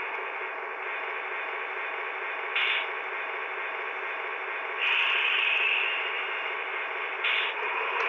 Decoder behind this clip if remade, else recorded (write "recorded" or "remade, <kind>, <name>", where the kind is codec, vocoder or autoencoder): recorded